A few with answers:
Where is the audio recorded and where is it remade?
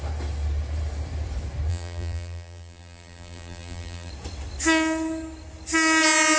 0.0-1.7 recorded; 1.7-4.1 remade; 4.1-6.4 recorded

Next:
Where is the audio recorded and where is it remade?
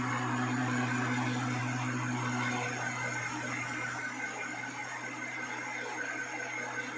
0.0-7.0 recorded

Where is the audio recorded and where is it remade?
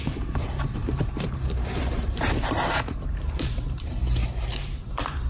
0.0-4.0 remade; 4.0-4.5 recorded; 4.5-5.3 remade